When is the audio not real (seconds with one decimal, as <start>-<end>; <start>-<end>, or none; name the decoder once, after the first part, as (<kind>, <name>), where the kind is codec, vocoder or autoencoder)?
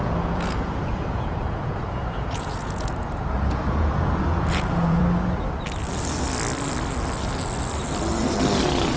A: 0.0-5.0 (vocoder, Vocos)